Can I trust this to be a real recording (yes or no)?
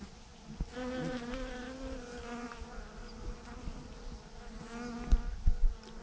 yes